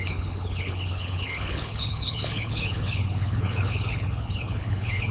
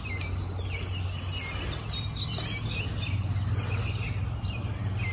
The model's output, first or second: first